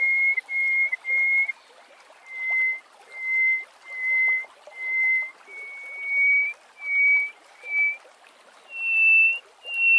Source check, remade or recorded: recorded